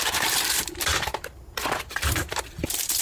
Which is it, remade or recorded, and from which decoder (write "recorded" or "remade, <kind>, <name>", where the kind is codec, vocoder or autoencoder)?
remade, vocoder, BigVGAN v2